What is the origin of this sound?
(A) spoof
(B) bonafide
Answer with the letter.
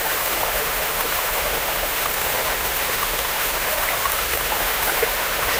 A